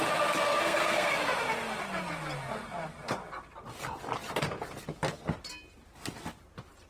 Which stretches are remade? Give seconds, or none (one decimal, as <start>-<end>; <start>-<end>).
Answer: 0.5-1.1